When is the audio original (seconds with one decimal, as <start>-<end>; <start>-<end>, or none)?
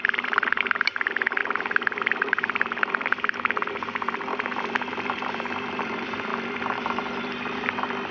6.3-7.1